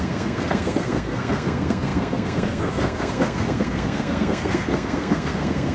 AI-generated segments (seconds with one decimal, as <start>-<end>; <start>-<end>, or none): 0.0-5.7